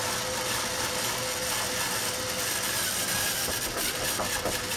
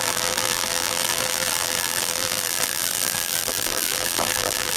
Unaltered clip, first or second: first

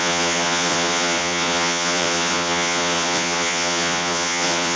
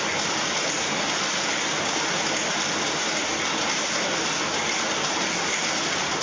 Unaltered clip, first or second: second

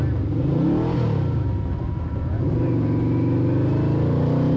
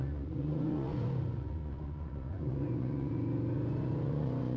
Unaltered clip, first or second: first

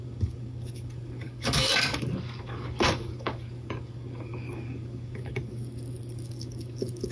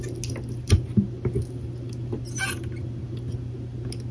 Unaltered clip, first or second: second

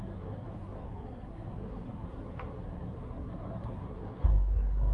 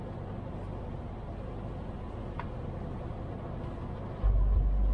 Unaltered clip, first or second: second